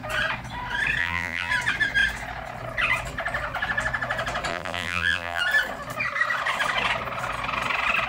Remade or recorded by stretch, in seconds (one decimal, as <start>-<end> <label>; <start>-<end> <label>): 0.0-1.0 recorded; 1.0-1.5 remade; 1.5-4.5 recorded; 4.5-5.4 remade; 5.4-8.1 recorded